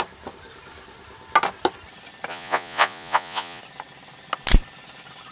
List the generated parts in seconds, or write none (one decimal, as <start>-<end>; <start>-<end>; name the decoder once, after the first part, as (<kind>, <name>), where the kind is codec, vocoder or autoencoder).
2.3-3.6 (vocoder, Vocos)